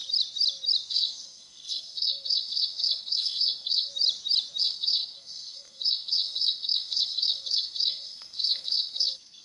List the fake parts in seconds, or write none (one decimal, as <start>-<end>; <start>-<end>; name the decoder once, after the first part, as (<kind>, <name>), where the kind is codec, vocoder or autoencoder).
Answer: 0.9-3.9 (codec, SNAC); 4.6-9.4